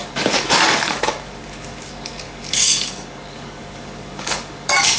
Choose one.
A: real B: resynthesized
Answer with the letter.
B